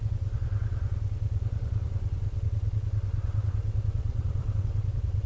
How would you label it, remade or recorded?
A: remade